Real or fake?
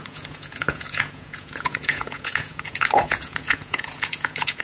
fake